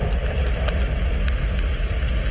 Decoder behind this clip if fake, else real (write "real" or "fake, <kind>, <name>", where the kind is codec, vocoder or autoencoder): fake, vocoder, BigVGAN v2